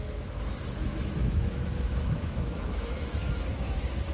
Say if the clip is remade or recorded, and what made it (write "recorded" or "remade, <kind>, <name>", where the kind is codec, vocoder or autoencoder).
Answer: remade, autoencoder, DAC-VAE